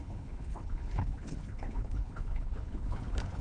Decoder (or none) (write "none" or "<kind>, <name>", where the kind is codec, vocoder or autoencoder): codec, HILCodec